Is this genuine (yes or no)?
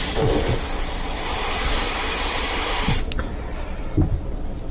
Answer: yes